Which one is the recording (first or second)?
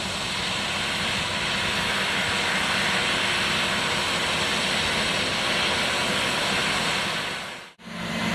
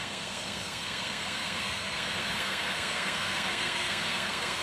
first